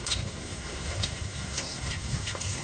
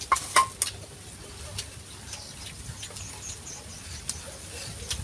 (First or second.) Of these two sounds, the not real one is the first